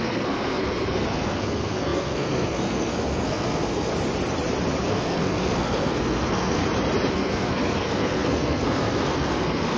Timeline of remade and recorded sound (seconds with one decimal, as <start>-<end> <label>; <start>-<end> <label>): 0.0-3.9 remade; 3.9-4.9 recorded; 4.9-6.6 remade; 6.6-7.1 recorded; 7.1-9.8 remade